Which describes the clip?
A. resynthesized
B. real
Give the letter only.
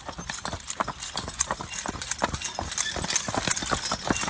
B